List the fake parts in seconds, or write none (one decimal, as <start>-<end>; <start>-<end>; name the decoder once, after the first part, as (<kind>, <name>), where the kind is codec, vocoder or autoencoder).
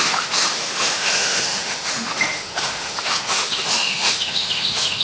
0.0-5.0 (autoencoder, DAC-VAE)